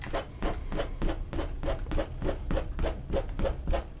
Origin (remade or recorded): recorded